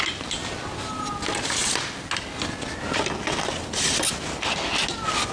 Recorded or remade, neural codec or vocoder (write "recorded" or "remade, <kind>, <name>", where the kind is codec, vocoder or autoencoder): recorded